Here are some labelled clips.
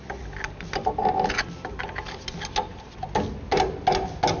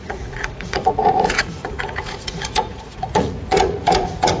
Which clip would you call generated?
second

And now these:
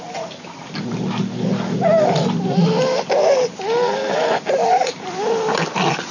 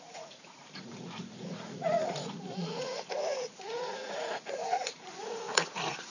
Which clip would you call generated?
second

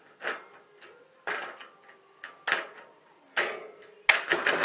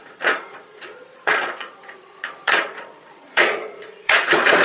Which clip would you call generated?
second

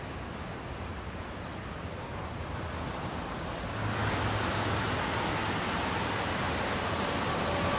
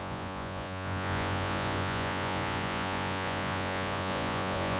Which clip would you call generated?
second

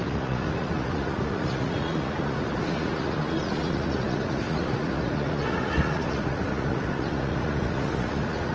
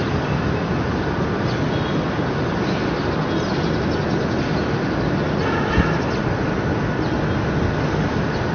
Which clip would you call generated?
first